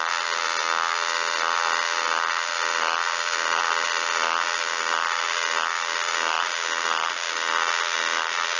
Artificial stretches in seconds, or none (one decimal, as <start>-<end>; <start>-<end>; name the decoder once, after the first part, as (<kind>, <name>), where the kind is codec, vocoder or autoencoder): none